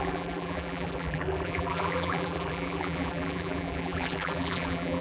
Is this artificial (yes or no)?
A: yes